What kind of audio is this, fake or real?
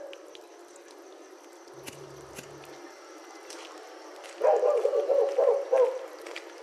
real